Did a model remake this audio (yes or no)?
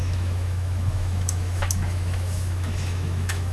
yes